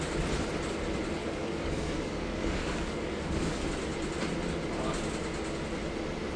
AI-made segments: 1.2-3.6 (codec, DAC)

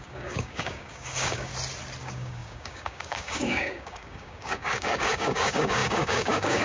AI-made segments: 0.0-1.5 (codec, DAC); 2.0-6.6

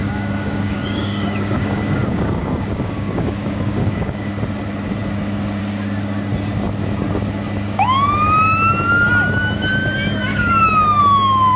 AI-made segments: 0.0-4.3 (codec, DAC); 10.3-11.0

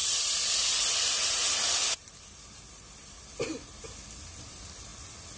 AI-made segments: none